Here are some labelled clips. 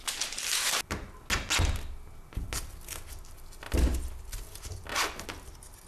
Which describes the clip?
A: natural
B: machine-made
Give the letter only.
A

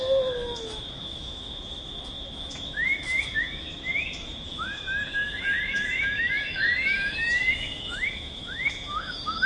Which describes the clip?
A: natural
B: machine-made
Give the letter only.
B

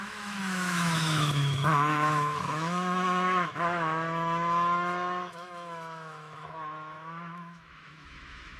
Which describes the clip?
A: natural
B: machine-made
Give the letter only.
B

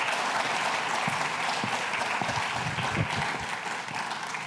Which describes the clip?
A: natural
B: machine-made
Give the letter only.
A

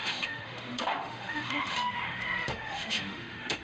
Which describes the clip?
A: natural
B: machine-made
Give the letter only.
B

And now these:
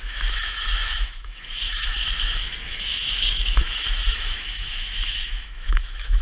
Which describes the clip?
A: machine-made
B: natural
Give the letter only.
A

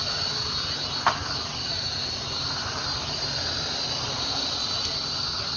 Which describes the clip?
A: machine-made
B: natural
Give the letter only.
B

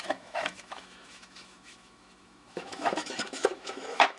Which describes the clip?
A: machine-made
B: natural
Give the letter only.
A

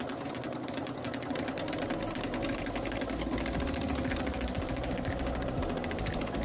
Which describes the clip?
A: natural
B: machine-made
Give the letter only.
A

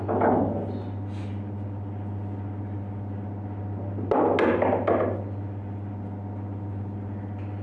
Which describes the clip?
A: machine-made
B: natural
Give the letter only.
B